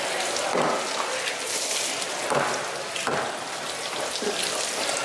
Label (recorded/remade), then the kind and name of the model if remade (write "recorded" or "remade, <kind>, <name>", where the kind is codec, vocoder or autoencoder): recorded